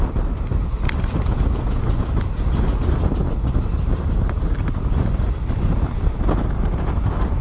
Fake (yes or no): no